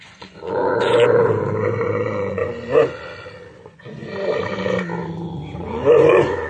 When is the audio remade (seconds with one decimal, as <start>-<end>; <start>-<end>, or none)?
0.0-2.4; 3.6-4.0; 5.6-6.5